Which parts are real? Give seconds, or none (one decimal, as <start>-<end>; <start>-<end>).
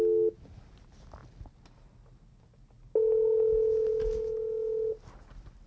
0.0-5.7